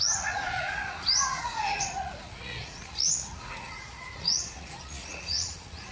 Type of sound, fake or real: fake